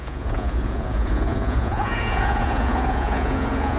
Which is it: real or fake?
fake